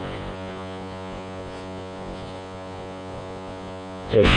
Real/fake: fake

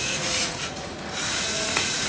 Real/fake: fake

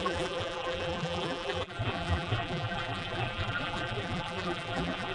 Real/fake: fake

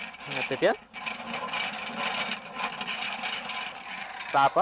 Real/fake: fake